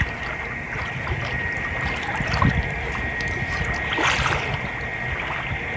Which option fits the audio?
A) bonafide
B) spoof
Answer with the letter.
A